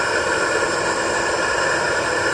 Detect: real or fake real